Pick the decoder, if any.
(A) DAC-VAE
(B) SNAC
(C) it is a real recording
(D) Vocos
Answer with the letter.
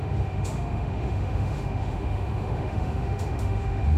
A